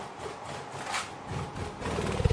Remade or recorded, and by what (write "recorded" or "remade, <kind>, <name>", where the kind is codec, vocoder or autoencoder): recorded